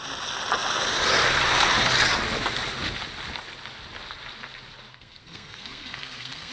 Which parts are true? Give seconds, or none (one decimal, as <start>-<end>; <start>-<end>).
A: 0.0-4.9